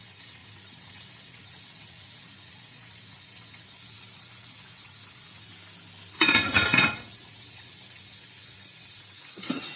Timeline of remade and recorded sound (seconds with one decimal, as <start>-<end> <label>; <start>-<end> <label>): 0.0-5.5 remade; 5.5-6.1 recorded; 6.1-9.8 remade